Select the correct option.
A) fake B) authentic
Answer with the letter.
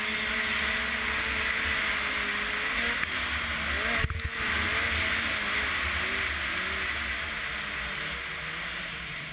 B